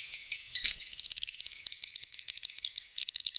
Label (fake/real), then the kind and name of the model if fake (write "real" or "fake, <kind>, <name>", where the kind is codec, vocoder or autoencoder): fake, codec, SNAC